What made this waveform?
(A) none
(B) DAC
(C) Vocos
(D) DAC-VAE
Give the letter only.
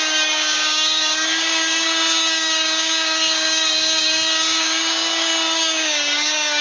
B